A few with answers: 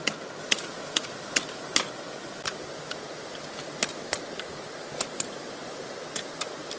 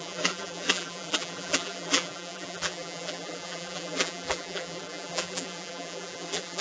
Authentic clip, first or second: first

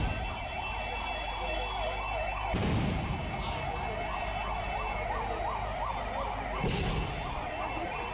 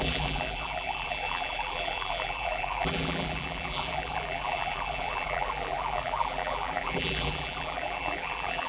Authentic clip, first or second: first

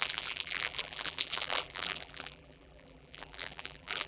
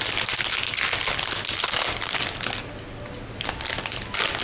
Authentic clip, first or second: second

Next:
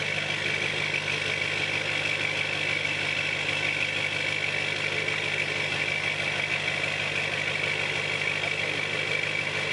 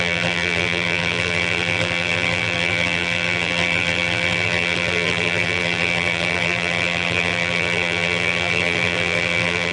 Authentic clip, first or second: first